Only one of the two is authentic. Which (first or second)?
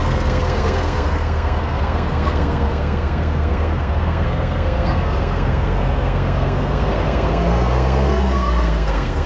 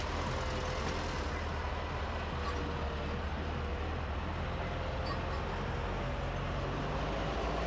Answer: second